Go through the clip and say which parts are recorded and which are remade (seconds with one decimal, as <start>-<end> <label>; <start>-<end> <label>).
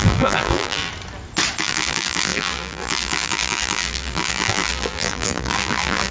0.0-0.9 remade; 0.9-1.6 recorded; 1.6-6.1 remade